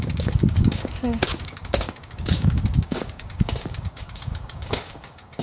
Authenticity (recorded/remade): remade